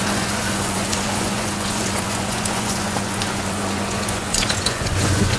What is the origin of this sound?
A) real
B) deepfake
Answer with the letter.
B